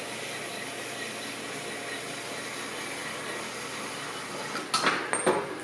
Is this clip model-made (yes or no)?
no